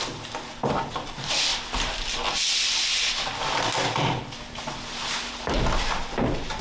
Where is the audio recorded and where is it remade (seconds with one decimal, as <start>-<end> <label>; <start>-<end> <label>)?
0.0-6.6 recorded

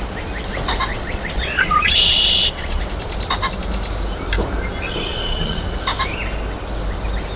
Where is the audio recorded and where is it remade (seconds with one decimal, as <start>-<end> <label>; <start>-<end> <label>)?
0.0-0.9 recorded; 0.9-2.8 remade; 2.8-5.1 recorded; 5.1-5.6 remade; 5.6-7.4 recorded

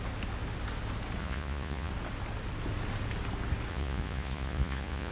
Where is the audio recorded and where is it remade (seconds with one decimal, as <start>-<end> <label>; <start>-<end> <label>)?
0.0-1.2 recorded; 1.2-1.9 remade; 1.9-3.7 recorded; 3.7-5.1 remade